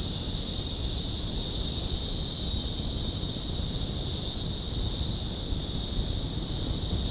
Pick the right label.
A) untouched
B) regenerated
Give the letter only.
A